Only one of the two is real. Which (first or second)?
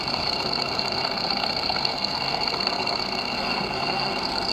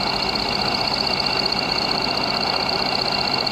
second